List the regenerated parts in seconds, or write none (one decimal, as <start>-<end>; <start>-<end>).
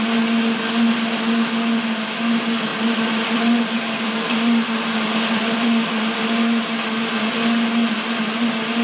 2.7-6.2